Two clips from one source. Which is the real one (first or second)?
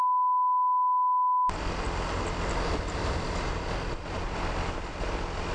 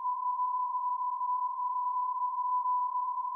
first